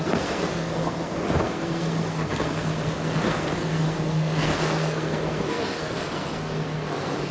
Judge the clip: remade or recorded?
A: remade